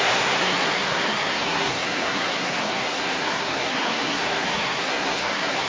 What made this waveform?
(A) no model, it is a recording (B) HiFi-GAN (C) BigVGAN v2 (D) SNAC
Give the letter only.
D